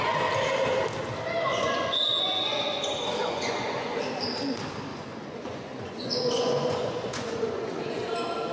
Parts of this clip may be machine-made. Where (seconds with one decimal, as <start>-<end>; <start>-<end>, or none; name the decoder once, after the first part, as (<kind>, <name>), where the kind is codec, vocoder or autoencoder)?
1.5-4.0 (vocoder, Vocos); 4.9-8.1